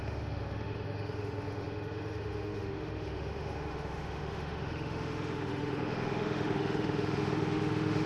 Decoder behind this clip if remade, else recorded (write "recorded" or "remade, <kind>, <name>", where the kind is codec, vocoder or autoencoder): remade, autoencoder, DAC-VAE